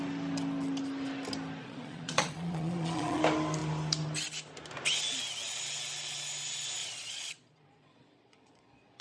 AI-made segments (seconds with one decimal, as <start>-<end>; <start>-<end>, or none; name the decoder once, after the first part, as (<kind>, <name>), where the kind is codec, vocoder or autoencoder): 1.6-3.2 (vocoder, Vocos); 6.8-9.0